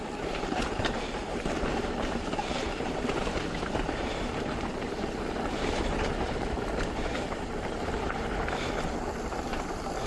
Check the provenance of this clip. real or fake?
fake